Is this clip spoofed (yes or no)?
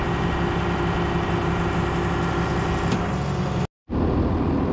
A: no